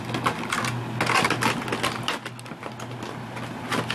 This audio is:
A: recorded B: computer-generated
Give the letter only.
A